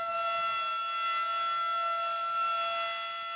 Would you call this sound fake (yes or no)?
no